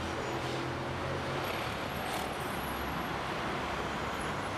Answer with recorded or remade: recorded